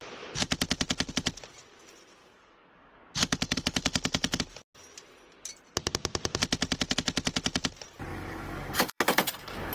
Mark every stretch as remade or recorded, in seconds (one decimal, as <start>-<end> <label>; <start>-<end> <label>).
0.0-2.2 recorded; 2.2-4.4 remade; 4.4-8.1 recorded; 8.1-9.7 remade